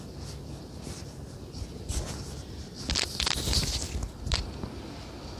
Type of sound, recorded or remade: recorded